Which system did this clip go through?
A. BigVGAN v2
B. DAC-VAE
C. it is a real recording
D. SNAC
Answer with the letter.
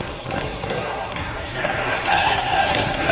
D